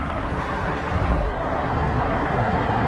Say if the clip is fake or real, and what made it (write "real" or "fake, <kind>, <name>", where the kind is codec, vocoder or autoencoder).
fake, codec, SNAC